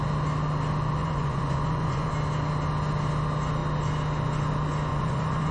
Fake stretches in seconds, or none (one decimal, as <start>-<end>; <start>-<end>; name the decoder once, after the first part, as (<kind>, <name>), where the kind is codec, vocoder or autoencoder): 1.0-2.1 (vocoder, Vocos); 4.9-5.5